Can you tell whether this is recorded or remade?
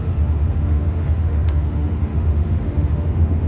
remade